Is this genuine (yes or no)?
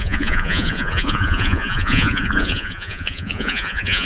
no